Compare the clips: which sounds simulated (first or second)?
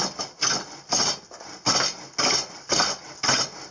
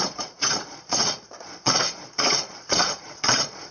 second